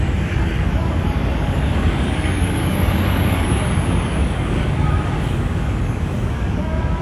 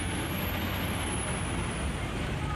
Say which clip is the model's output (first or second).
first